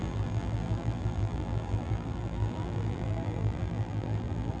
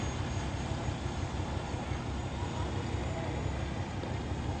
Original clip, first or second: second